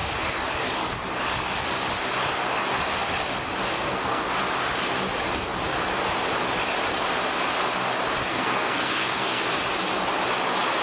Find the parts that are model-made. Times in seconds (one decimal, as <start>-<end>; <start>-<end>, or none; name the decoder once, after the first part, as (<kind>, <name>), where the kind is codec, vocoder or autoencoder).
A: 3.7-4.3 (codec, SNAC); 8.3-9.4